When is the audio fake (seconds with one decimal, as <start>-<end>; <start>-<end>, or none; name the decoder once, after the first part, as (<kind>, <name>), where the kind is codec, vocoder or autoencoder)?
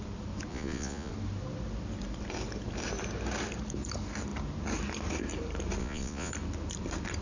0.5-1.1 (vocoder, Vocos); 5.8-6.3